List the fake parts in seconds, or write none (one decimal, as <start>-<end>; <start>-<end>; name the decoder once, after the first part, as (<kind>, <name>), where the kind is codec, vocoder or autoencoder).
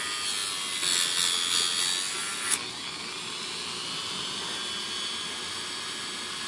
none